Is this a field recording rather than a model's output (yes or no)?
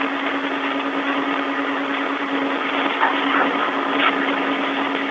yes